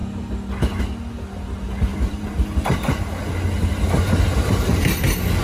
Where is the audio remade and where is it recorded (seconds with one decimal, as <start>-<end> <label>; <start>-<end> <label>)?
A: 0.0-1.9 recorded; 1.9-5.4 remade